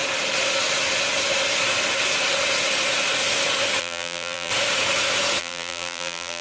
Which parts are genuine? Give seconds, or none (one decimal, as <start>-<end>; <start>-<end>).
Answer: 0.0-3.8; 4.5-5.4